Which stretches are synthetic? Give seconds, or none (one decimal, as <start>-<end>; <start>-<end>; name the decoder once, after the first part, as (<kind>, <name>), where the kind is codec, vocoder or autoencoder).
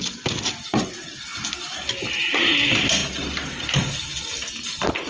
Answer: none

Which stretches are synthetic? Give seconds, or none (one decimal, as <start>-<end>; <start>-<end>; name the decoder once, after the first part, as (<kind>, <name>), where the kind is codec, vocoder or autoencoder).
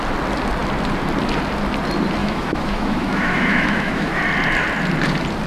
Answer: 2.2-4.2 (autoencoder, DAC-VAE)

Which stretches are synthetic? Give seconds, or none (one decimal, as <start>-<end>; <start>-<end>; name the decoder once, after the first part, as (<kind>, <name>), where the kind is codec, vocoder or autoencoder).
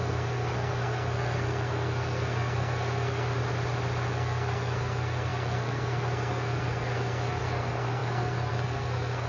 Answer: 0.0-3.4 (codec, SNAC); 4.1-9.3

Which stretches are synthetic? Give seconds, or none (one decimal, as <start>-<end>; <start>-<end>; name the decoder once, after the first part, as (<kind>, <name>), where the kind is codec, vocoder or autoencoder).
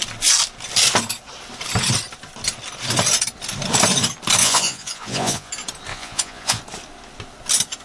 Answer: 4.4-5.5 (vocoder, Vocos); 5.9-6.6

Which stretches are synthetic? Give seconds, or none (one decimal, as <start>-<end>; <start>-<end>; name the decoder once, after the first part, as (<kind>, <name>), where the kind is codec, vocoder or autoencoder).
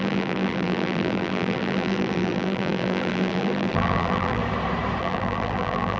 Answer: 0.0-4.4 (vocoder, BigVGAN v2); 5.0-6.0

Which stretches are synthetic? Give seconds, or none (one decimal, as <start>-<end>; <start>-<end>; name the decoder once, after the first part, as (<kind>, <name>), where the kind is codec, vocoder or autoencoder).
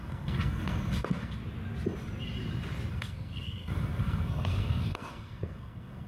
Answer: 0.0-1.4 (codec, SNAC); 2.9-6.1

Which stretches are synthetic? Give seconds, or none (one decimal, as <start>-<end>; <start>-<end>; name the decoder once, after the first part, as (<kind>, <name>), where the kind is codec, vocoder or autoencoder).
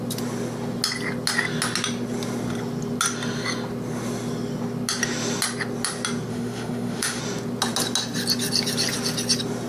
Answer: 6.3-7.2 (autoencoder, DAC-VAE)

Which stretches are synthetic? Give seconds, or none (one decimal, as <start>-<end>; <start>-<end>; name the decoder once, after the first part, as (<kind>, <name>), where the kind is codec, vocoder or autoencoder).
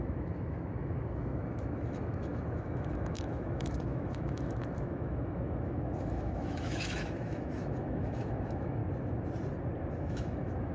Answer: 0.0-8.8 (autoencoder, DAC-VAE); 10.0-10.7